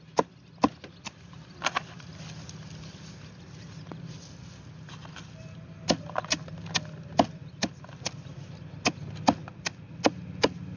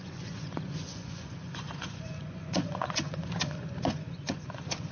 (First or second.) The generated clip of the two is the second